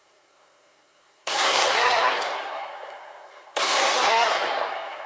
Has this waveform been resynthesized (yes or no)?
yes